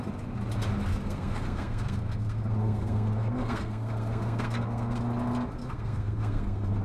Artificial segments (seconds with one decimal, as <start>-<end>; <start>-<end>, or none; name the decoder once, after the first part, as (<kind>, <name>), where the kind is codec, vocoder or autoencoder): 0.9-5.0 (codec, SNAC); 5.6-6.8